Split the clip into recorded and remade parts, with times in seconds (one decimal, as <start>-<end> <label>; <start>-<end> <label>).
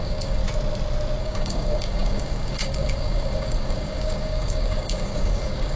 0.0-0.4 remade; 0.4-1.2 recorded; 1.2-5.8 remade